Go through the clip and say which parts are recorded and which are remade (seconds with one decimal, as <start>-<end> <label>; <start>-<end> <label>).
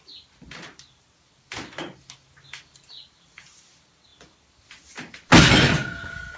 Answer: 0.0-6.4 recorded